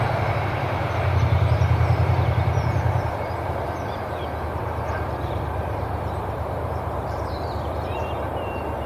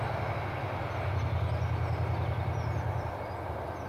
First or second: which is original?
second